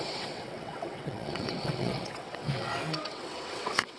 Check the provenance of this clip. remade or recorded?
remade